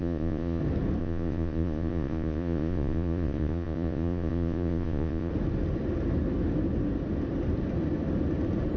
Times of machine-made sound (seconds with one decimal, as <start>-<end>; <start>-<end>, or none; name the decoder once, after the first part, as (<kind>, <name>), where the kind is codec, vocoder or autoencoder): 0.0-0.6 (vocoder, Vocos); 1.0-5.3